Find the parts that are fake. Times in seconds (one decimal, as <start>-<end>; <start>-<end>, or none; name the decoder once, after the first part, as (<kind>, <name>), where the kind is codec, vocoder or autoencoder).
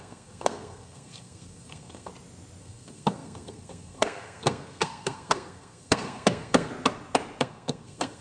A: 0.0-2.1 (codec, SNAC); 2.6-6.7; 7.4-8.2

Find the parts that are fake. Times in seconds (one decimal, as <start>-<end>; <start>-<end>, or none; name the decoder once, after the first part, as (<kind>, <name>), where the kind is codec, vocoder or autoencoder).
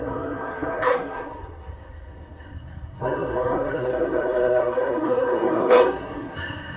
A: 0.0-6.8 (codec, SNAC)